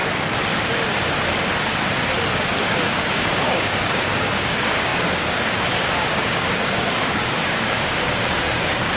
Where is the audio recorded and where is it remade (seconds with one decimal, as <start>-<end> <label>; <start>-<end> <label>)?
0.0-2.6 recorded; 2.6-9.0 remade